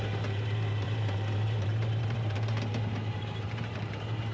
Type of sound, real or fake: fake